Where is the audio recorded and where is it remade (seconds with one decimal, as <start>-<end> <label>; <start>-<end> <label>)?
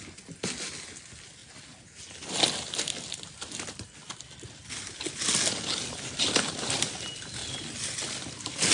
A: 0.0-8.7 recorded